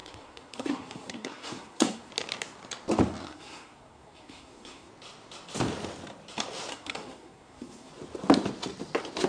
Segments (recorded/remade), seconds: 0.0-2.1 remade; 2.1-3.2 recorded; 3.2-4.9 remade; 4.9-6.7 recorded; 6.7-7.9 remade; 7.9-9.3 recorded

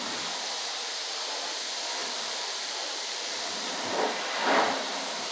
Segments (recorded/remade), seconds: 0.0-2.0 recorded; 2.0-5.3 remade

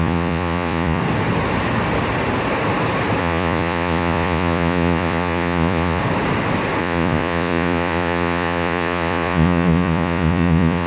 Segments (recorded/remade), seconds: 0.0-1.0 remade; 1.0-3.2 recorded; 3.2-6.0 remade; 6.0-6.8 recorded; 6.8-10.9 remade

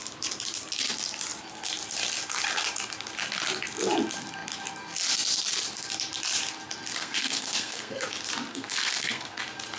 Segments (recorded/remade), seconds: 0.0-7.0 recorded; 7.0-8.0 remade; 8.0-8.5 recorded; 8.5-9.4 remade; 9.4-9.8 recorded

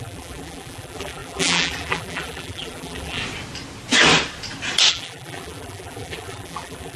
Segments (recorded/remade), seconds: 0.0-3.2 remade; 3.2-4.9 recorded; 4.9-7.0 remade